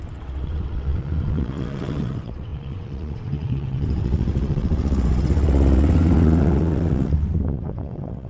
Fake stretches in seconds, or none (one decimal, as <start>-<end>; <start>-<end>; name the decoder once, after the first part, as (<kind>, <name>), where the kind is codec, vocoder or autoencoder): 0.0-8.3 (vocoder, WaveNeXt)